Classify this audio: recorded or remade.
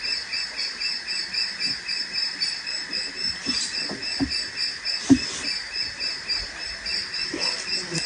recorded